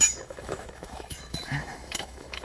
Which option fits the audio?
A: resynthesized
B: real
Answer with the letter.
A